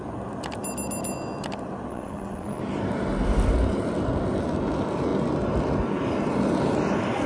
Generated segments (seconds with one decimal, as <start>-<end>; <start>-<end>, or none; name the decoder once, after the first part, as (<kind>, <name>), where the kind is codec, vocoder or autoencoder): 1.9-2.6 (vocoder, WaveNeXt)